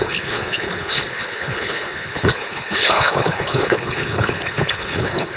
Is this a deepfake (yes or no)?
yes